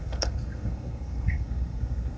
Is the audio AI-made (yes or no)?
yes